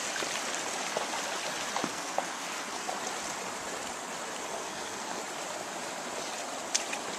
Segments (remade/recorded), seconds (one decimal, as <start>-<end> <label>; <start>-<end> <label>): 0.0-1.9 recorded; 1.9-2.9 remade; 2.9-4.4 recorded; 4.4-5.2 remade; 5.2-7.2 recorded